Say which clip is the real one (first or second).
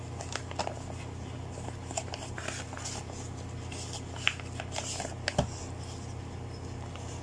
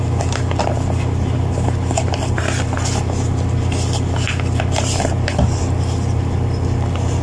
first